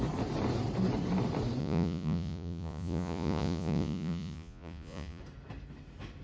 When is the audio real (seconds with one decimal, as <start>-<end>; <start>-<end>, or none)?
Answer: 0.0-1.6; 5.2-6.2